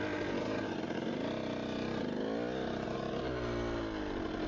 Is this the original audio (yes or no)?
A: yes